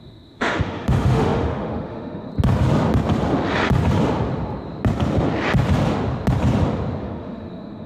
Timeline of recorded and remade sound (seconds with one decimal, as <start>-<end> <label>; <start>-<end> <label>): 0.0-2.3 remade; 2.3-7.0 recorded; 7.0-7.9 remade